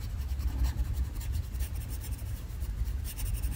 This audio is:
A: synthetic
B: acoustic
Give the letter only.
A